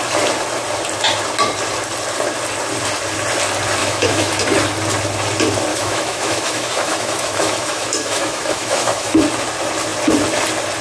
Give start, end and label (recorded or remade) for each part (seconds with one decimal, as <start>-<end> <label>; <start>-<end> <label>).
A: 0.0-3.8 recorded; 3.8-4.3 remade; 4.3-5.7 recorded; 5.7-9.2 remade; 9.2-10.8 recorded